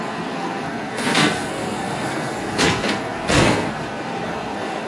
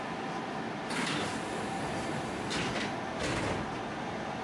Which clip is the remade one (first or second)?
first